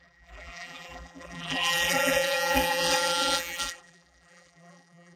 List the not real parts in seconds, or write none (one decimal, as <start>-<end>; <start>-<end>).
0.0-5.2